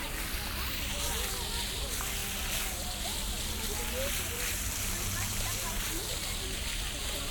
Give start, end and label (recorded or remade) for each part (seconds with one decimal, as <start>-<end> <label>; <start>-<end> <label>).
0.0-7.3 recorded